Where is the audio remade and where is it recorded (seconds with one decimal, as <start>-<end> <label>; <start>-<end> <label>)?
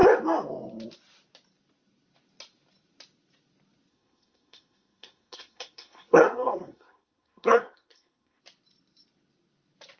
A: 0.0-3.9 recorded; 3.9-8.4 remade; 8.4-10.0 recorded